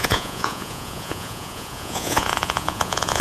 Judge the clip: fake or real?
fake